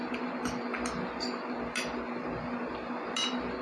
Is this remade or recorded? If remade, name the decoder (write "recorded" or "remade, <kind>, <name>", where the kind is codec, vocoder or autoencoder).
recorded